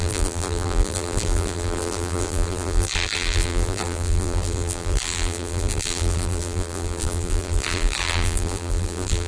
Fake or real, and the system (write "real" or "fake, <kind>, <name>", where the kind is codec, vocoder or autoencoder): fake, vocoder, BigVGAN v2